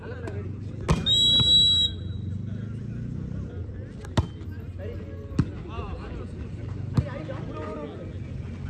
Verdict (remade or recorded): recorded